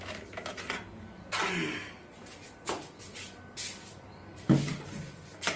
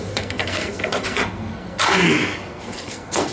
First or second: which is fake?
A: second